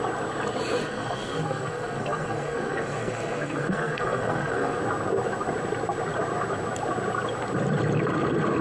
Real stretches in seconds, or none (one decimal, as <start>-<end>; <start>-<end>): 0.0-0.8; 4.8-8.6